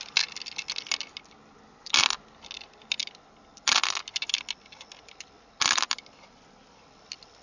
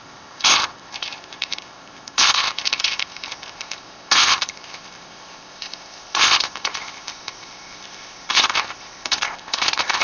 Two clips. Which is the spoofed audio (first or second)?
second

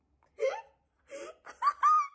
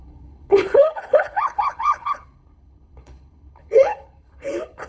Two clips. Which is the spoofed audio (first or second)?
second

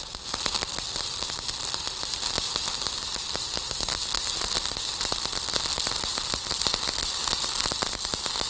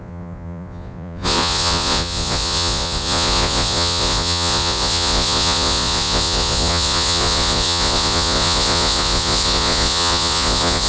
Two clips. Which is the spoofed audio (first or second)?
second